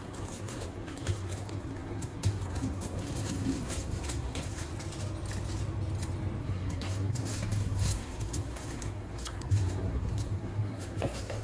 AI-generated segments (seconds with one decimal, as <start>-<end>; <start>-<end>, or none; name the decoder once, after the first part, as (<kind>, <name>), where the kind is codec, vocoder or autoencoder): 0.0-4.7 (codec, SNAC); 6.4-11.4